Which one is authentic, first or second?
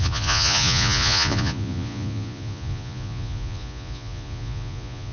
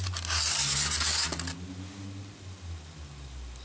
second